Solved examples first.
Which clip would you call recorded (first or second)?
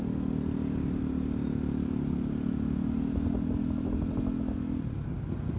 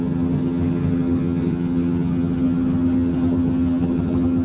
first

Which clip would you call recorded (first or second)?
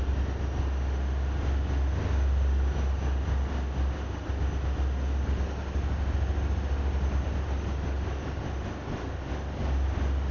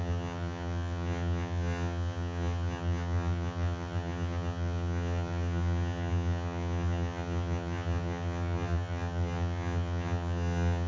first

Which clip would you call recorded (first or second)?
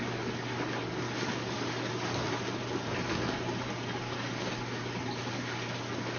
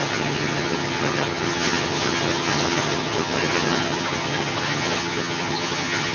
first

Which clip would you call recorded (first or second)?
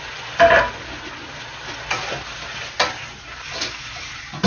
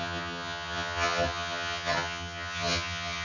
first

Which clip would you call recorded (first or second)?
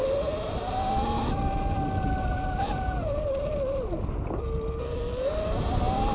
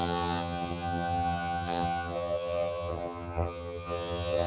first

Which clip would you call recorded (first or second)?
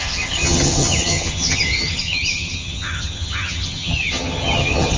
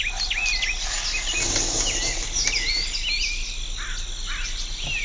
second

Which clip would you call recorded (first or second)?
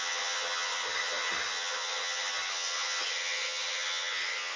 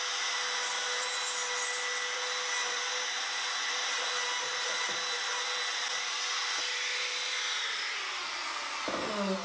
second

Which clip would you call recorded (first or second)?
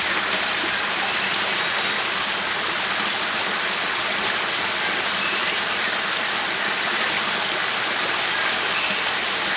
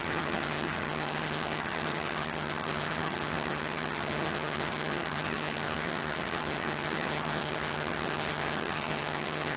first